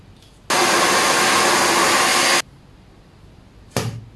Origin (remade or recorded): recorded